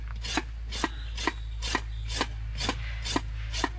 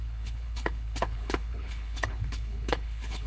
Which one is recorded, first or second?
first